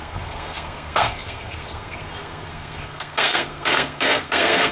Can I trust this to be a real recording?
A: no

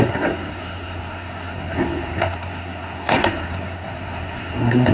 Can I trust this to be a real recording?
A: no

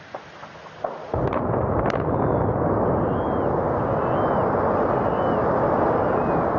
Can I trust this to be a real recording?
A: yes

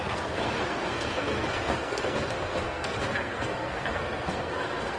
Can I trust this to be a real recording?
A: no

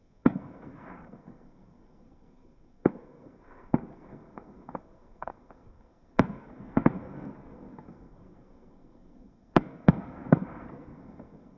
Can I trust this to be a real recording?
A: no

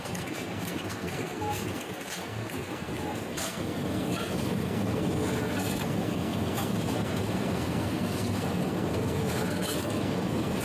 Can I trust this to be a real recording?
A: no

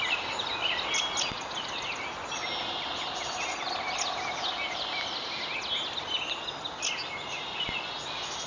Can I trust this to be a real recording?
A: yes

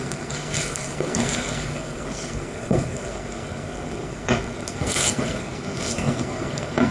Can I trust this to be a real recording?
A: no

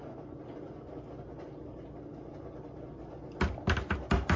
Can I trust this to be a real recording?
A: yes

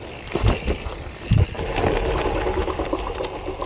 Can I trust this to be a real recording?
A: yes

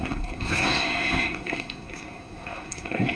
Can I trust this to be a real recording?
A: no